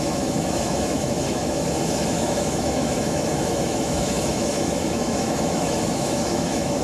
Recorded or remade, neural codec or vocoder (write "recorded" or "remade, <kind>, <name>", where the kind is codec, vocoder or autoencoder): remade, autoencoder, DAC-VAE